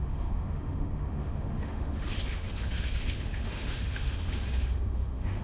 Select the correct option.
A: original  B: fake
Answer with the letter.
B